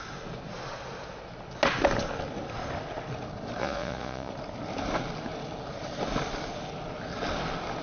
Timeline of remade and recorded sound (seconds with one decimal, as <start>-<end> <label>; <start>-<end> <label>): 0.0-3.6 recorded; 3.6-4.3 remade; 4.3-7.8 recorded